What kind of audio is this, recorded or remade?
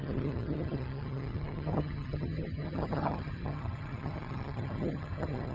remade